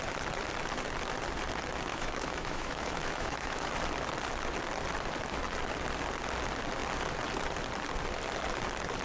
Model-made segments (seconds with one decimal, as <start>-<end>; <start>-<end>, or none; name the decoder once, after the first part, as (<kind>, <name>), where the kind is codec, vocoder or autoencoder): 1.9-3.7 (autoencoder, DAC-VAE)